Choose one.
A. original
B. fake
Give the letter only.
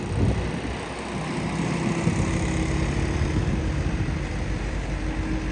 A